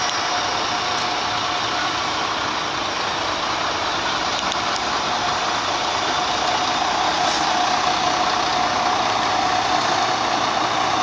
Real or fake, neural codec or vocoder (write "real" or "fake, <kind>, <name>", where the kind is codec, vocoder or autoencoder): real